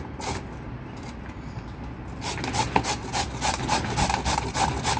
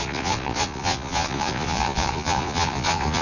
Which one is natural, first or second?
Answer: first